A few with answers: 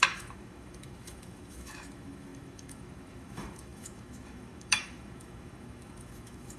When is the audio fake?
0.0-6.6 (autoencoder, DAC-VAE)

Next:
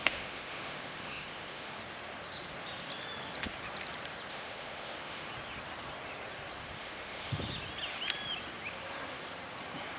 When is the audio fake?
0.0-1.8 (autoencoder, DAC-VAE); 4.3-5.3; 6.6-7.4

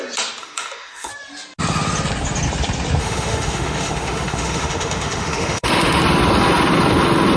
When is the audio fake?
0.4-1.1 (autoencoder, DAC-VAE); 3.0-6.0

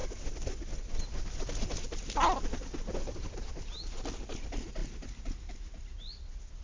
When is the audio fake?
none

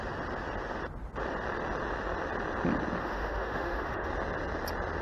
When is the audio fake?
3.0-4.1 (autoencoder, DAC-VAE)

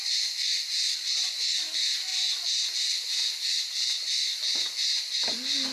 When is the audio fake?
none